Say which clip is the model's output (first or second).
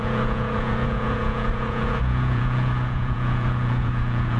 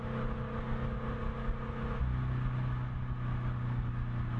first